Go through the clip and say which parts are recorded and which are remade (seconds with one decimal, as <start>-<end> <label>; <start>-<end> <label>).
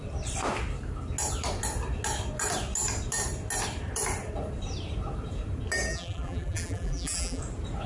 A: 0.0-5.9 recorded; 5.9-7.4 remade; 7.4-7.9 recorded